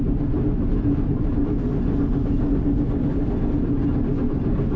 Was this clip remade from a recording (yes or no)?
no